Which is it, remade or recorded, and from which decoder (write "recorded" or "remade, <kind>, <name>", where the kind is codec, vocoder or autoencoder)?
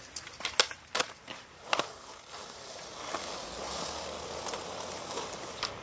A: recorded